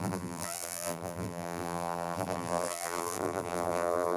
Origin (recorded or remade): remade